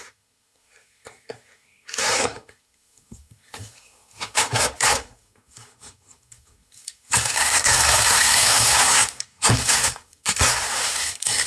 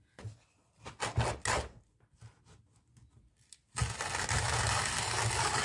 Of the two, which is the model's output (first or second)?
first